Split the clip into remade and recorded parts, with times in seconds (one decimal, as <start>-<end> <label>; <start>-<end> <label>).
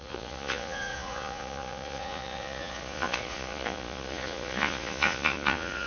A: 0.0-5.9 remade